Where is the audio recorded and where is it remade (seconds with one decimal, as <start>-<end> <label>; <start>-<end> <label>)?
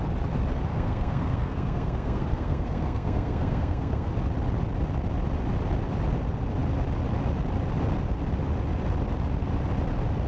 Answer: 0.0-0.7 recorded; 0.7-4.1 remade; 4.1-10.3 recorded